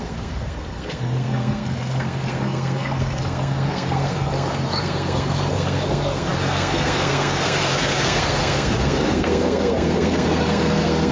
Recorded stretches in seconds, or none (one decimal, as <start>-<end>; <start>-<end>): none